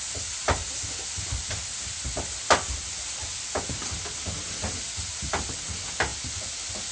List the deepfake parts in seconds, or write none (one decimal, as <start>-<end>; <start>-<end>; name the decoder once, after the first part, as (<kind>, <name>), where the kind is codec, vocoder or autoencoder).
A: none

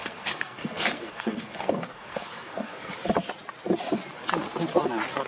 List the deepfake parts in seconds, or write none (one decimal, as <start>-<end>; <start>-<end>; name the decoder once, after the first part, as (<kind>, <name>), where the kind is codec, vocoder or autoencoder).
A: 0.0-2.9 (codec, SNAC)